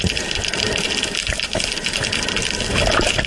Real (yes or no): yes